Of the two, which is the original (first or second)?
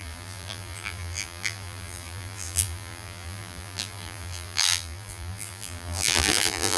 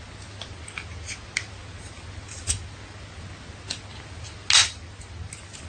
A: second